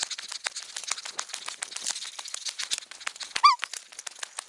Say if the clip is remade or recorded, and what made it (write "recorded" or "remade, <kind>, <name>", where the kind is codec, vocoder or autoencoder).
recorded